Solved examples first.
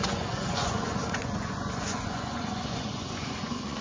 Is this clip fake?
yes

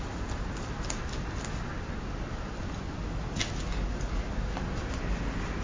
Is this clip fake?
no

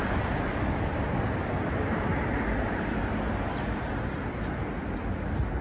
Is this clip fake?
no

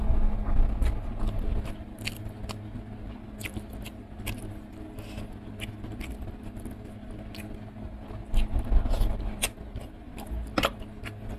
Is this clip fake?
no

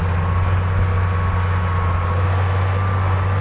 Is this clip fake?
no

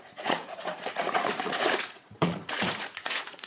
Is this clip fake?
yes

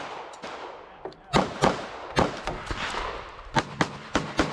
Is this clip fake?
no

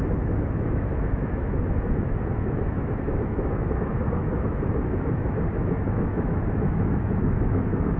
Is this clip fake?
yes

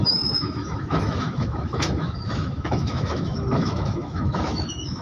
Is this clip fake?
yes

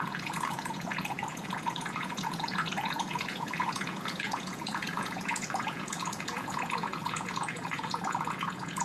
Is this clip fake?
yes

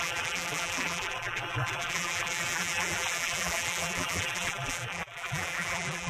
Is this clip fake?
yes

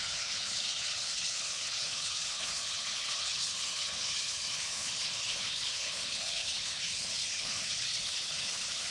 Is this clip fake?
yes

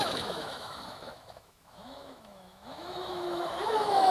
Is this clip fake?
yes